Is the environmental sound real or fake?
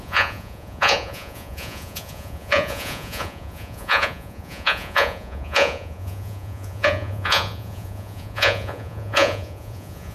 fake